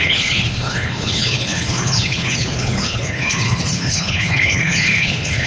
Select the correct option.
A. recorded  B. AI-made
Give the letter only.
B